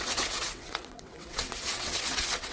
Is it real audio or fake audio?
fake